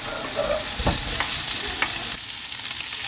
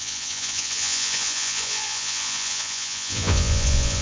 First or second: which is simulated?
second